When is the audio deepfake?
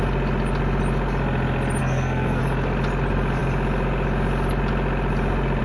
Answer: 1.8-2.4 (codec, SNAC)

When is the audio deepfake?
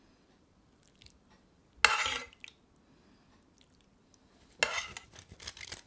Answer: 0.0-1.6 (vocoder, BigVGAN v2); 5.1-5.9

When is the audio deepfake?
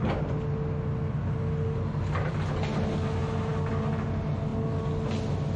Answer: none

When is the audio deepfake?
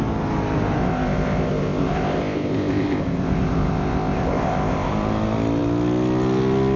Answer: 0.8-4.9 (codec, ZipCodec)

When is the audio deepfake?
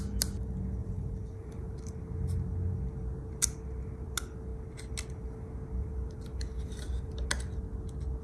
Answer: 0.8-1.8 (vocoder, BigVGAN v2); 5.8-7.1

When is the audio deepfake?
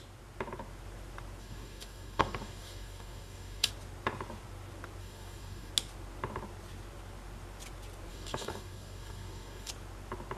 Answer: 1.4-3.7 (codec, DAC); 5.0-5.7; 8.1-9.7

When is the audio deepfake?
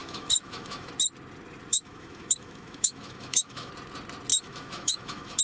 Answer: 0.0-0.9 (autoencoder, DAC-VAE); 1.7-3.7; 4.3-5.4